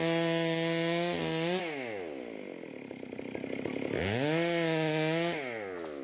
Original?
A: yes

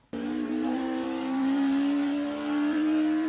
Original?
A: no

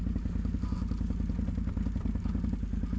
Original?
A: yes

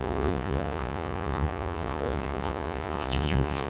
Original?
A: no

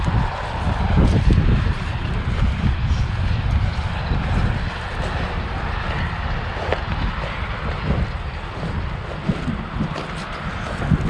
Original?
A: yes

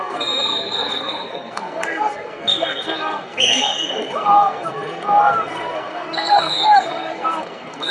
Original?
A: no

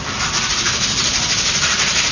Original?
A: yes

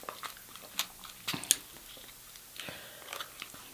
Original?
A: yes